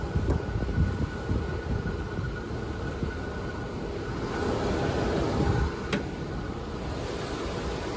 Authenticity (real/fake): real